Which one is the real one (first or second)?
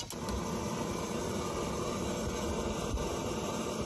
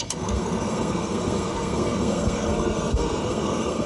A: first